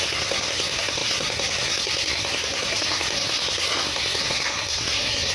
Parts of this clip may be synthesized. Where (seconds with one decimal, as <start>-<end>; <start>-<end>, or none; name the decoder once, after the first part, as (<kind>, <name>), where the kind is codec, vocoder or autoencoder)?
0.0-5.3 (codec, SNAC)